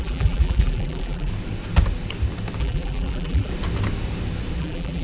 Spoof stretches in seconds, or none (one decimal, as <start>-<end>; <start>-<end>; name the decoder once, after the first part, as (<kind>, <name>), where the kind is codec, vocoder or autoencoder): 0.0-1.3 (vocoder, BigVGAN v2); 2.6-3.5; 4.6-5.0